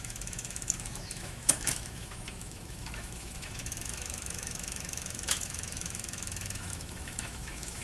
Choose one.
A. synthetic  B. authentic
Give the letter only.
A